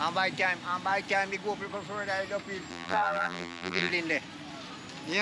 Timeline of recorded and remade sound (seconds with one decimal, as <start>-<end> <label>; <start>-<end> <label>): 0.0-2.7 recorded; 2.7-3.9 remade; 3.9-5.2 recorded